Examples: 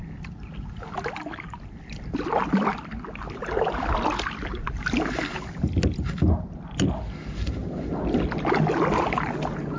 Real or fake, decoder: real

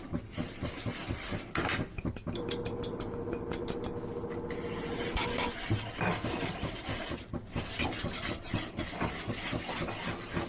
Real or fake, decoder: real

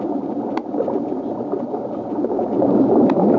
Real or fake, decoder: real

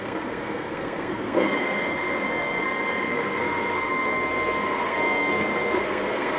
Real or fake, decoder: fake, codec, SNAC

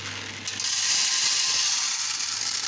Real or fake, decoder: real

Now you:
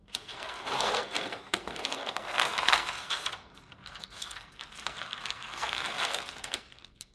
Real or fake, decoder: fake, codec, SNAC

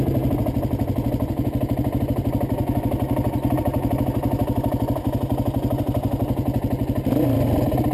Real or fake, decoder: real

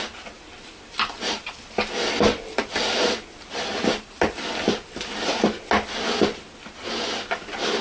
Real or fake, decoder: real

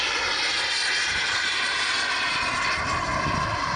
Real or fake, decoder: real